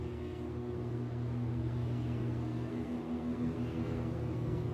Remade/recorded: remade